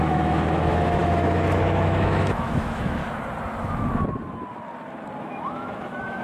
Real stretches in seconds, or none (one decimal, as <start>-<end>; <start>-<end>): 3.0-5.2